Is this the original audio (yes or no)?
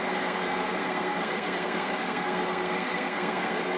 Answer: no